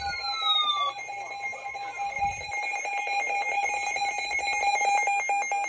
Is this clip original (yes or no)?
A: yes